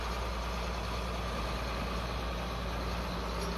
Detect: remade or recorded recorded